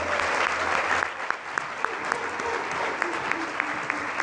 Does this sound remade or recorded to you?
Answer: recorded